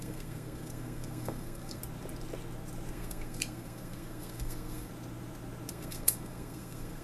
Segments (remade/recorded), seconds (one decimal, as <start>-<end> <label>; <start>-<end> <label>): 0.0-1.8 remade; 1.8-2.9 recorded; 2.9-4.9 remade; 4.9-5.7 recorded; 5.7-7.0 remade